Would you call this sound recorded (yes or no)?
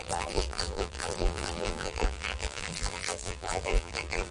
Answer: no